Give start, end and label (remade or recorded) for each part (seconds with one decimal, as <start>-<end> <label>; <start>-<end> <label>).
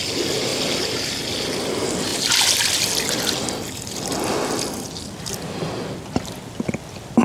0.0-7.2 recorded